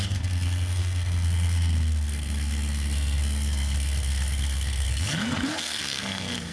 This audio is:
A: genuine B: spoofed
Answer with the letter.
B